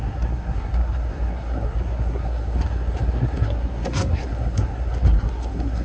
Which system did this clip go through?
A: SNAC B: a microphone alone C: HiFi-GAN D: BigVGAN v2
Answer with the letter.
A